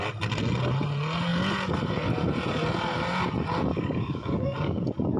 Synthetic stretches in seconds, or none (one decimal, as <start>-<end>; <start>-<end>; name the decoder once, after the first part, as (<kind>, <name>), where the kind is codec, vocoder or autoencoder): 3.7-4.8 (codec, DAC)